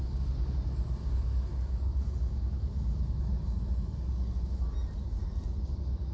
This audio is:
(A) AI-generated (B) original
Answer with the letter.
B